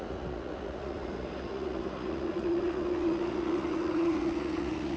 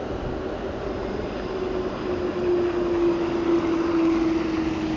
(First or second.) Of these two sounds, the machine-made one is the first